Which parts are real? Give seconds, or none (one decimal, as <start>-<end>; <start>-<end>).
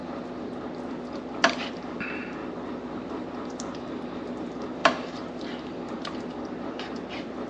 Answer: 0.0-0.9; 2.4-3.1; 4.8-5.4